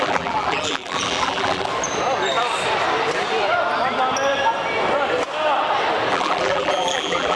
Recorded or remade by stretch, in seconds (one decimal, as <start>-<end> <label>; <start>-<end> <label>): 0.0-1.7 remade; 1.7-6.1 recorded; 6.1-7.4 remade